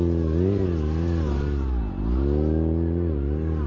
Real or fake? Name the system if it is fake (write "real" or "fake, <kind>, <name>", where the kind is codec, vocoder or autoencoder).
real